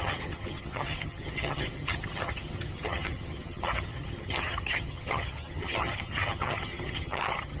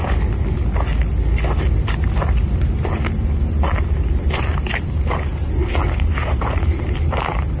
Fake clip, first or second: first